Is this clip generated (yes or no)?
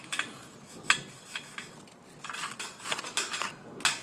no